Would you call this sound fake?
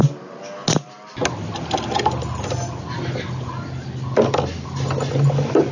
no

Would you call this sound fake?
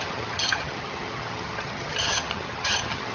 yes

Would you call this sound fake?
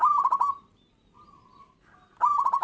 no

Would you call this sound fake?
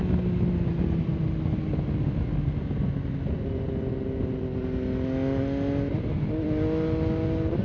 no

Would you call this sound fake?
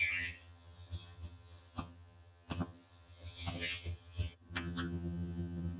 yes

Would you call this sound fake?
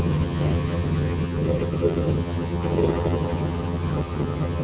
yes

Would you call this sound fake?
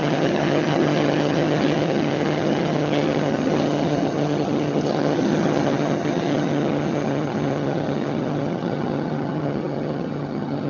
yes